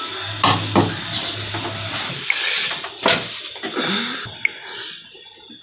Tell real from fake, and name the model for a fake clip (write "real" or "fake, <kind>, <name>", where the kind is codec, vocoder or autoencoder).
real